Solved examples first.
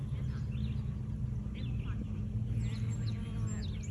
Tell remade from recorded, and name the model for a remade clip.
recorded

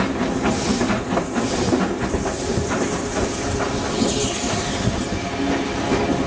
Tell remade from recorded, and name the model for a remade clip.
recorded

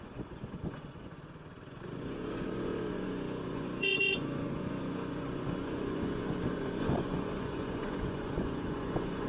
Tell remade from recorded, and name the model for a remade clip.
remade, vocoder, Vocos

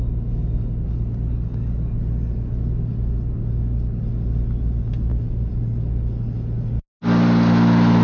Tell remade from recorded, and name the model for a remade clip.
recorded